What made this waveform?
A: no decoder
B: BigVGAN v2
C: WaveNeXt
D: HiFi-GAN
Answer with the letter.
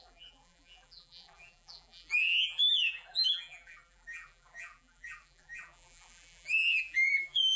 B